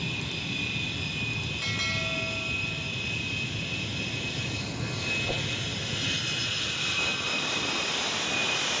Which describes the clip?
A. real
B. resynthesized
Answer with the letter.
A